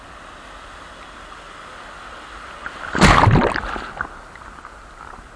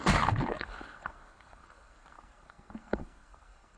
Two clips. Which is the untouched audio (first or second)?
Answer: first